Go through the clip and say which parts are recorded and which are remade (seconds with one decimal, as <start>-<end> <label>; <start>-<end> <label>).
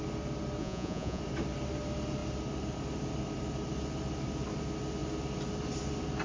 0.0-0.6 recorded; 0.6-1.2 remade; 1.2-6.2 recorded